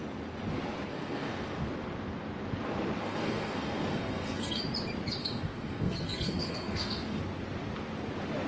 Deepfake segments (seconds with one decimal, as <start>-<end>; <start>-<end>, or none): 0.9-1.7; 3.0-4.6; 5.2-7.2